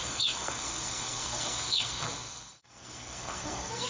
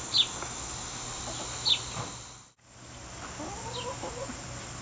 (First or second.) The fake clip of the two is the first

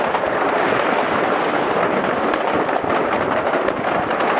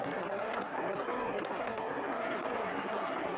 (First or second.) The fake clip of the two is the second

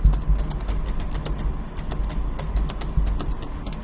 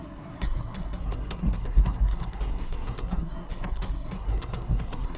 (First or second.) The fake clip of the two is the second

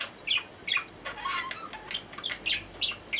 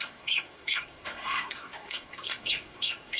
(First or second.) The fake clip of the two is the second